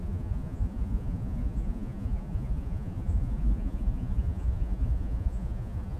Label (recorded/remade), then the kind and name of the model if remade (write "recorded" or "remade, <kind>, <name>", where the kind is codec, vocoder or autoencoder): remade, vocoder, Vocos